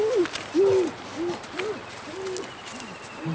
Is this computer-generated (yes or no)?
no